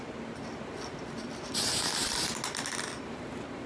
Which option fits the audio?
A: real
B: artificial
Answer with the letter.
A